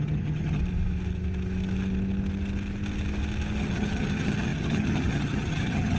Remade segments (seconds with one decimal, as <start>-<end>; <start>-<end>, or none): 0.0-0.6; 3.6-6.0